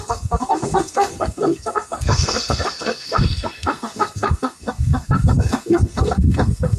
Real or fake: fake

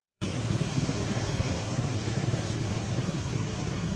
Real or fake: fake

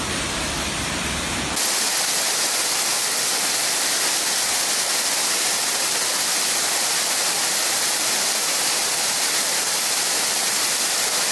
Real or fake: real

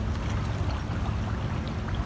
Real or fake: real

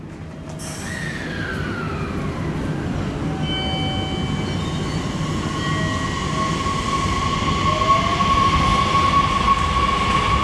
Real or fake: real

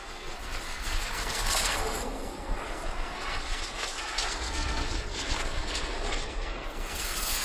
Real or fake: fake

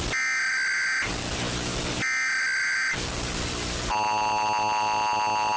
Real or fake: real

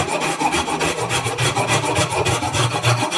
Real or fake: real